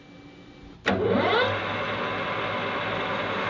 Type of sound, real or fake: real